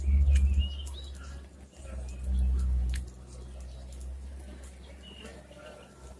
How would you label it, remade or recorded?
recorded